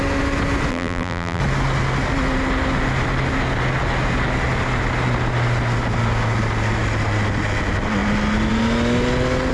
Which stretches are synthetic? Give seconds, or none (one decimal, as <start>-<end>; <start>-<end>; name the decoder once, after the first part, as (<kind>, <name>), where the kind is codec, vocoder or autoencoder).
0.7-1.4 (vocoder, BigVGAN v2)